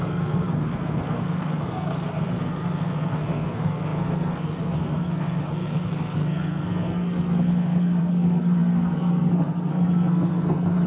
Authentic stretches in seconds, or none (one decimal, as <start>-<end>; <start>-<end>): none